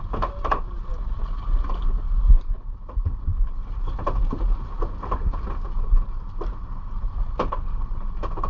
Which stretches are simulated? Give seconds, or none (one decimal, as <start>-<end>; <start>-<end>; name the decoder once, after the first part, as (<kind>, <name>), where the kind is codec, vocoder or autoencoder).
none